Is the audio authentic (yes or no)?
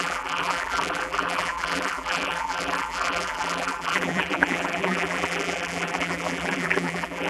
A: no